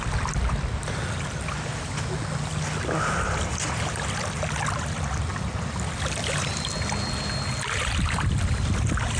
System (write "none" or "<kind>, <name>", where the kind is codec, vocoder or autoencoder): none